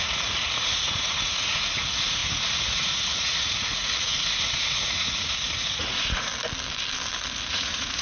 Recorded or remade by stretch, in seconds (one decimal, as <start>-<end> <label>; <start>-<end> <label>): 0.0-6.3 remade; 6.3-7.5 recorded; 7.5-8.0 remade